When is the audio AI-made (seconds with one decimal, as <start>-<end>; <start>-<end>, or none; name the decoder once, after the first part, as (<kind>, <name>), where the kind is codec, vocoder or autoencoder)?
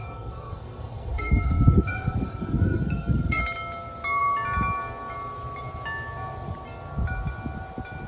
0.0-3.4 (codec, SNAC)